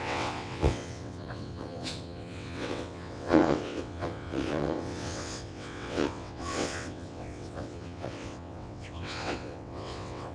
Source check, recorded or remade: remade